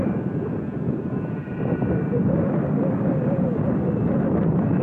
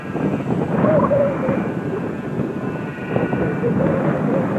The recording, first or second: second